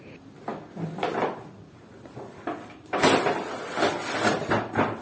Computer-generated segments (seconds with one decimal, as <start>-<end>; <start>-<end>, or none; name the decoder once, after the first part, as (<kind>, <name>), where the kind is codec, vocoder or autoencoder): none